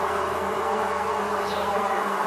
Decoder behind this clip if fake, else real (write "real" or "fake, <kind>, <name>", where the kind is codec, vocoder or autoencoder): fake, codec, SNAC